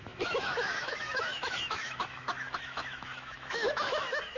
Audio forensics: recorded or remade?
remade